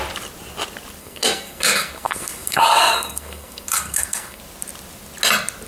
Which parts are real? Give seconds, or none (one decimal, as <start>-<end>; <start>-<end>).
0.0-1.0; 4.4-5.7